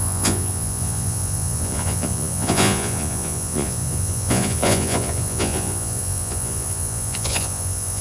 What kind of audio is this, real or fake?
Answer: fake